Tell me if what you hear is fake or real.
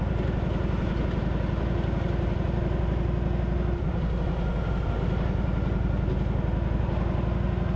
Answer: real